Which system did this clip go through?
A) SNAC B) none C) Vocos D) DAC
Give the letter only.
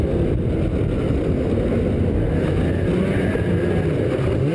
B